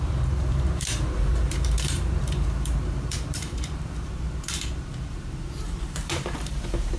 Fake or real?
fake